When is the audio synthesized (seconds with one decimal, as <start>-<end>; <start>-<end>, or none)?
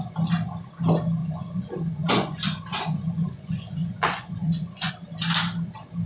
1.2-4.9